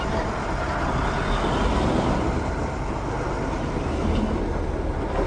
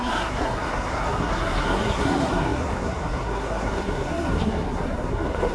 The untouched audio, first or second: first